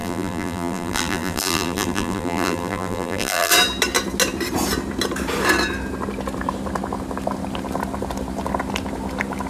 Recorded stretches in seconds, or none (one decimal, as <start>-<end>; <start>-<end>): 3.5-9.5